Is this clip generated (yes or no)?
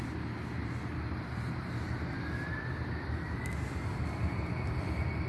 no